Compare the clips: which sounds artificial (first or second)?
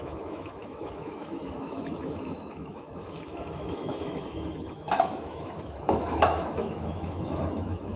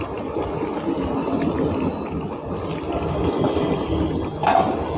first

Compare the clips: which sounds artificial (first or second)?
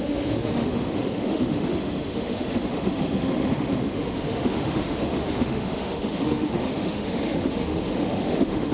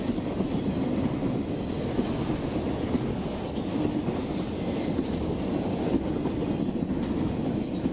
first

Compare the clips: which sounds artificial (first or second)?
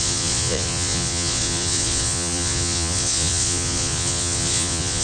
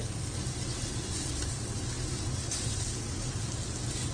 first